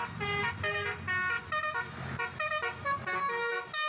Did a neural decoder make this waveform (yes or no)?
no